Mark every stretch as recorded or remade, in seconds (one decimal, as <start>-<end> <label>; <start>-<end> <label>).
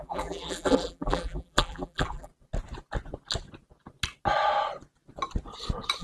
0.0-2.3 remade; 2.3-6.0 recorded